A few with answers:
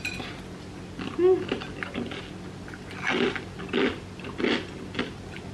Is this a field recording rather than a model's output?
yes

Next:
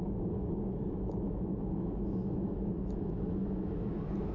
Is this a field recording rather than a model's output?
no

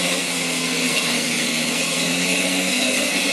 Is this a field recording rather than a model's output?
no